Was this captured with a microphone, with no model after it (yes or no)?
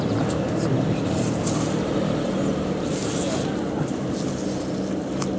yes